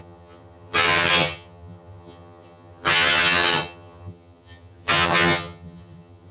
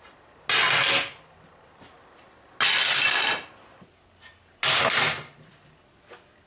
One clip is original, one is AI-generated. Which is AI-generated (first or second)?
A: first